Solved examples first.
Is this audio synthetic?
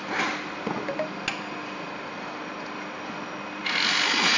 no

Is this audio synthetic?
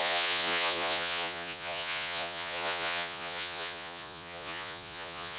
yes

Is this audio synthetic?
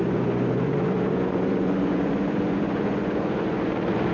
yes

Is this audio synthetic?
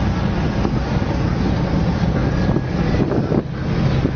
no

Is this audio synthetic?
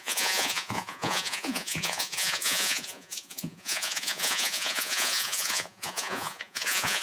yes